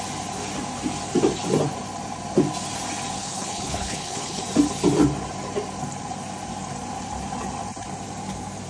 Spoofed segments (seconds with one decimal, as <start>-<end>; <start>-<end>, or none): 3.2-4.4